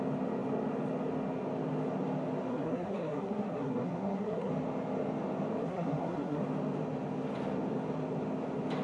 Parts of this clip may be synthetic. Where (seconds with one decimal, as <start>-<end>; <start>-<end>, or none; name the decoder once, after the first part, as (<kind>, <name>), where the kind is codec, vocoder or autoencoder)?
2.5-4.5 (codec, SNAC); 5.6-6.4